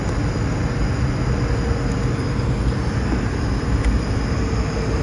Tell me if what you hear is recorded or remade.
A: recorded